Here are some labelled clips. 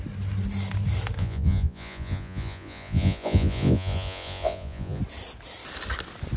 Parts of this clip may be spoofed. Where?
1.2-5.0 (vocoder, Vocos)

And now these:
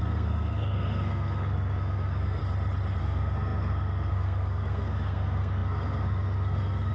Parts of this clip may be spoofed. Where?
0.0-2.4 (codec, SNAC); 3.0-6.9

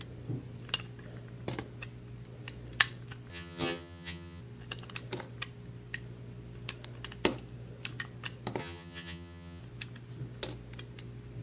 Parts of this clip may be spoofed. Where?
3.3-4.4 (vocoder, HiFi-GAN); 8.6-9.6

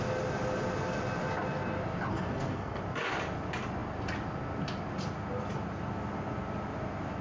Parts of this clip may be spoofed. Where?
2.1-2.8 (codec, SNAC)

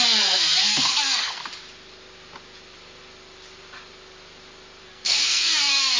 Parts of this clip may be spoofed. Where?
0.0-1.4 (codec, SNAC); 4.8-6.0